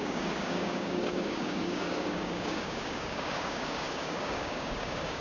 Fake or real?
fake